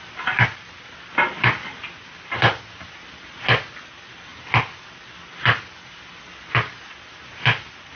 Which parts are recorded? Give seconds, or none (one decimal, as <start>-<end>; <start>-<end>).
0.0-8.0